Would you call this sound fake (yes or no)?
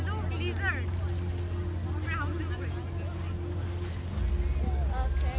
no